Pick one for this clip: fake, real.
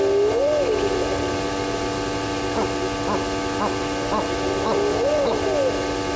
real